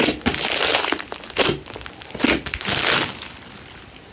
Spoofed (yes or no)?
no